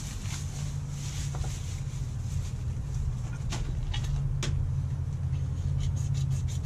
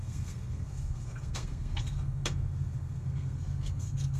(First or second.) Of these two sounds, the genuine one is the first